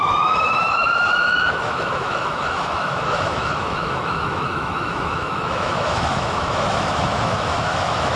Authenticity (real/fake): fake